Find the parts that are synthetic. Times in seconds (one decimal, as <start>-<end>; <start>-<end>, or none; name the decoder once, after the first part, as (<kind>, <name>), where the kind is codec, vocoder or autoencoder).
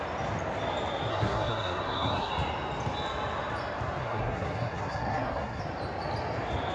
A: 1.1-2.3 (codec, SNAC); 4.0-5.6